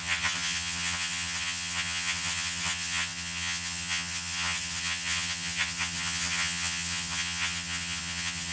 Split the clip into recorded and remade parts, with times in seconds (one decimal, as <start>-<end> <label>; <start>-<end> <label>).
0.0-8.5 remade